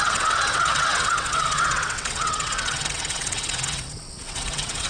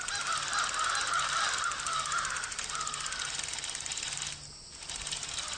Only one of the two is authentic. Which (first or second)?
second